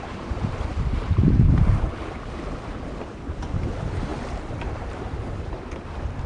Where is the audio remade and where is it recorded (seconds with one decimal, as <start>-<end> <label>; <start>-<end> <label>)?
0.0-2.0 remade; 2.0-3.6 recorded; 3.6-6.3 remade